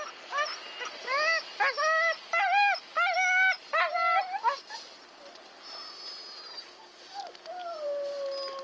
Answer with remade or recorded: recorded